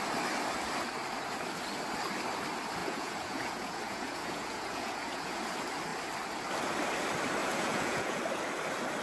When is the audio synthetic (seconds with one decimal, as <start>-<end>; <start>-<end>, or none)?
2.8-5.4; 7.4-8.2